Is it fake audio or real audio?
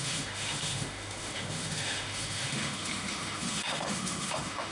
fake